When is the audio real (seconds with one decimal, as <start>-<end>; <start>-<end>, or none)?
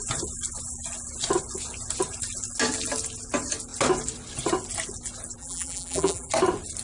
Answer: 0.0-5.4; 6.3-6.8